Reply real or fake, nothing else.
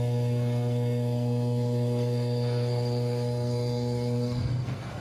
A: fake